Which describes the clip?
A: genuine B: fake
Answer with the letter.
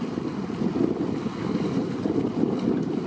A